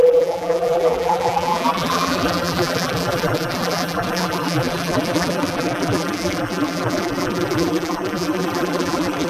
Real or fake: fake